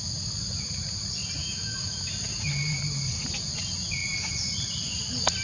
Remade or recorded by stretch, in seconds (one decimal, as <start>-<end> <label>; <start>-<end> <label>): 0.0-1.4 recorded; 1.4-2.1 remade; 2.1-5.4 recorded